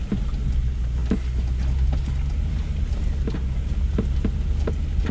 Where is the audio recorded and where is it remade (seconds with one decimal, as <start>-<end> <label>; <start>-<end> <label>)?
0.0-5.1 recorded